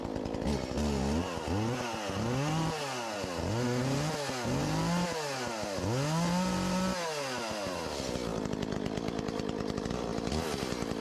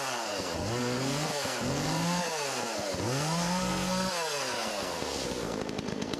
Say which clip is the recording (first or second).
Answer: first